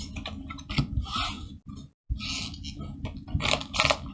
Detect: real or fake real